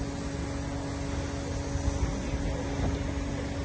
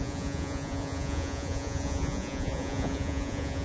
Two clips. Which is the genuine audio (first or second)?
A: first